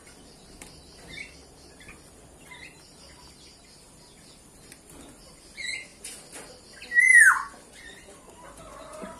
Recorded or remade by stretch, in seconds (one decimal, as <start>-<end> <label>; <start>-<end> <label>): 0.0-9.2 recorded